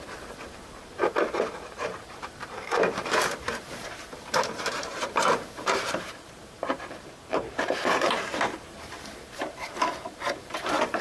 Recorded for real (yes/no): no